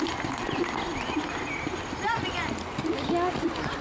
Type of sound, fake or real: real